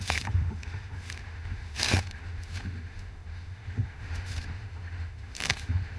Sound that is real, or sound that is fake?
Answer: fake